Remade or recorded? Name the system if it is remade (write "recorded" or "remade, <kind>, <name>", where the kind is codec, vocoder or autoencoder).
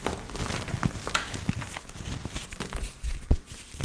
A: recorded